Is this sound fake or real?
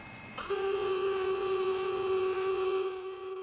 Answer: fake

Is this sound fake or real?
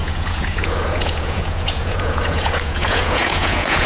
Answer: fake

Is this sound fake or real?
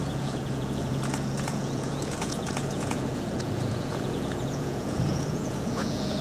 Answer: fake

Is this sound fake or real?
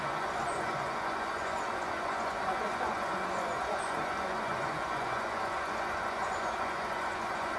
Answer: fake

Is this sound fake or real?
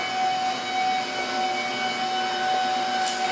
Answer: real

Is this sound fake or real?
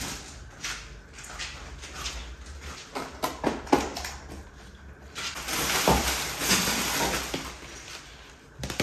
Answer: real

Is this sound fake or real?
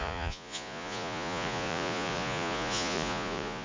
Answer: fake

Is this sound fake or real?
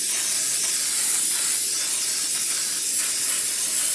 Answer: real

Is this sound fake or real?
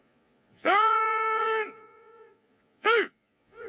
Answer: fake